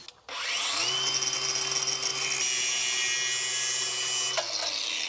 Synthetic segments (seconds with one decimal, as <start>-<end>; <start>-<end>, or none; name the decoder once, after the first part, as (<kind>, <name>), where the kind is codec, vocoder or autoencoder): none